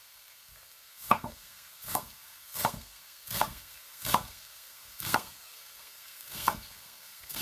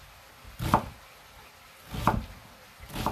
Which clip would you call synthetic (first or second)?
first